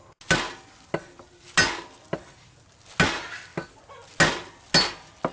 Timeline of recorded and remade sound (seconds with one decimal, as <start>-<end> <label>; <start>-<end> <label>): 0.0-5.3 recorded

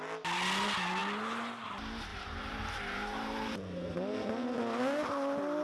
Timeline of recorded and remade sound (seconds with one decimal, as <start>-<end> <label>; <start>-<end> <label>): 0.0-2.1 recorded; 2.1-3.9 remade; 3.9-5.6 recorded

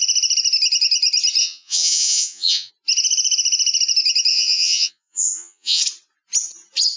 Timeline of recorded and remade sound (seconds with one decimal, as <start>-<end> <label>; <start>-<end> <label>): 0.0-1.4 recorded; 1.4-2.7 remade; 2.7-4.3 recorded; 4.3-5.8 remade; 5.8-7.0 recorded

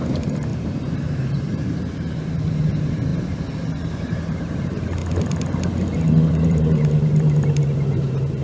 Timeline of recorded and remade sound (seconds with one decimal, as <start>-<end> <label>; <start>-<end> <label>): 0.0-3.1 remade; 3.1-3.7 recorded; 3.7-5.0 remade; 5.0-6.3 recorded; 6.3-8.4 remade

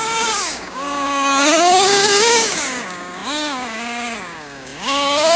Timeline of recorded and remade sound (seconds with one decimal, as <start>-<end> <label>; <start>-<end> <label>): 0.0-5.4 remade

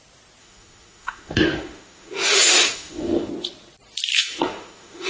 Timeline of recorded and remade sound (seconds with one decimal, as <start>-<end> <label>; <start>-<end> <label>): 0.0-0.4 recorded; 0.4-3.3 remade; 3.3-4.1 recorded; 4.1-5.1 remade